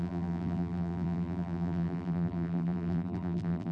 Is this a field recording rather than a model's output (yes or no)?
no